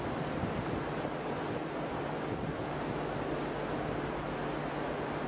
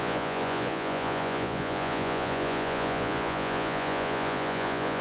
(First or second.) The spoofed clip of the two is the second